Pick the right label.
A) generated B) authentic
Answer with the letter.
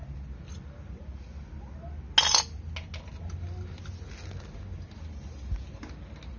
B